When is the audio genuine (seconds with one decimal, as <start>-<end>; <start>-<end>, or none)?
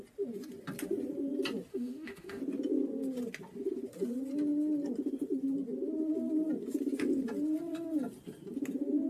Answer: 0.0-1.7; 2.4-9.1